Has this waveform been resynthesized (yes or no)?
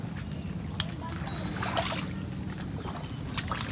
no